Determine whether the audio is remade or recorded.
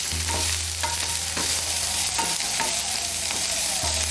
remade